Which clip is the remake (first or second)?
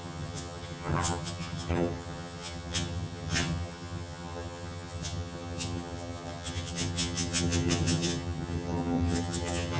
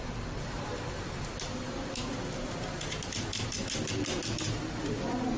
first